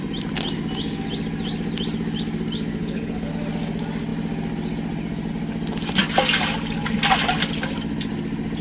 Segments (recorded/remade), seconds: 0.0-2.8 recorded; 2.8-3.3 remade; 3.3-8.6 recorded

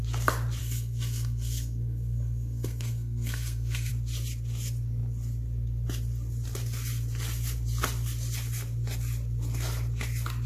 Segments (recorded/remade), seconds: 0.0-0.6 recorded; 0.6-3.9 remade; 3.9-10.5 recorded

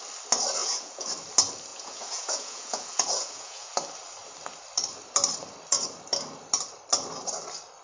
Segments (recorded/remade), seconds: 0.0-0.6 recorded; 0.6-1.1 remade; 1.1-1.7 recorded; 1.7-3.7 remade; 3.7-7.8 recorded

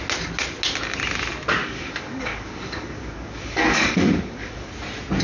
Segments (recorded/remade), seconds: 0.0-1.6 recorded; 1.6-4.7 remade; 4.7-5.2 recorded

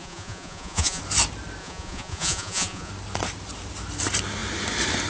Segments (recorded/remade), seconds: 0.0-1.0 remade; 1.0-1.6 recorded; 1.6-2.9 remade; 2.9-5.1 recorded

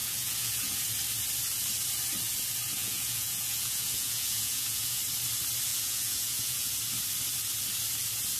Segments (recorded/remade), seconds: 0.0-0.9 remade; 0.9-2.8 recorded; 2.8-5.0 remade; 5.0-5.7 recorded; 5.7-6.7 remade; 6.7-8.4 recorded

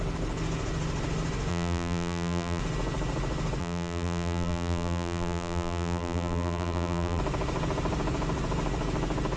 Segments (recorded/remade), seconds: 0.0-1.5 recorded; 1.5-2.6 remade; 2.6-3.6 recorded; 3.6-7.2 remade; 7.2-9.4 recorded

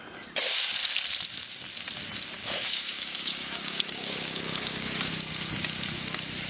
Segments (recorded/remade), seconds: 0.0-2.4 recorded; 2.4-5.1 remade; 5.1-6.5 recorded